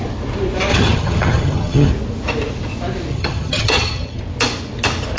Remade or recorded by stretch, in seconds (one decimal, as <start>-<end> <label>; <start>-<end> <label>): 0.0-0.7 recorded; 0.7-1.9 remade; 1.9-3.1 recorded; 3.1-4.2 remade; 4.2-5.2 recorded